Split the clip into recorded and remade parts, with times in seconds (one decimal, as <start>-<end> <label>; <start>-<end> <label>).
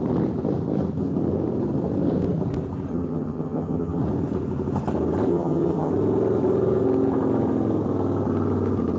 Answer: 0.0-2.9 recorded; 2.9-4.0 remade; 4.0-5.3 recorded; 5.3-5.9 remade; 5.9-9.0 recorded